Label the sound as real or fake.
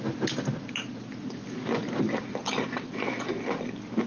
real